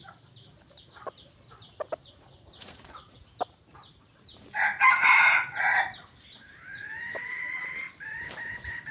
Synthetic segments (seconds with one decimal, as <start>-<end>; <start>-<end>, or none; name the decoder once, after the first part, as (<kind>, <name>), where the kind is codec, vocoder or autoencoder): 2.0-3.2 (vocoder, Vocos)